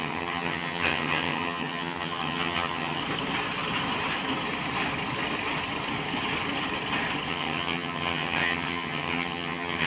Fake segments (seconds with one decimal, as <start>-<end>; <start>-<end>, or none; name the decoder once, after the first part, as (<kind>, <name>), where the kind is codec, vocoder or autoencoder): 0.0-3.0 (vocoder, HiFi-GAN); 7.3-9.9